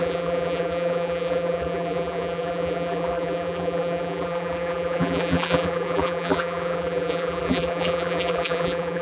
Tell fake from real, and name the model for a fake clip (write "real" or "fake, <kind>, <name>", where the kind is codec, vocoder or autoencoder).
fake, vocoder, BigVGAN v2